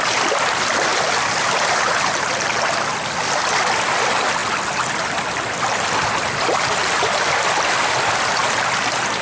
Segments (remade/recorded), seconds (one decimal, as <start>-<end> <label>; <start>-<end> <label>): 0.0-9.2 recorded